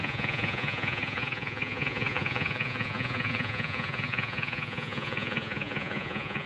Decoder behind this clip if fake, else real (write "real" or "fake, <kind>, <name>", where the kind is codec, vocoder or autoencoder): fake, vocoder, Vocos